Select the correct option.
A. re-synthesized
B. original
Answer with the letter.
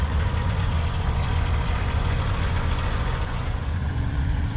A